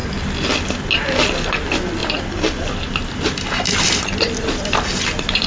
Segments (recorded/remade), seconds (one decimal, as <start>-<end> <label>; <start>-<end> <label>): 0.0-2.0 recorded; 2.0-5.5 remade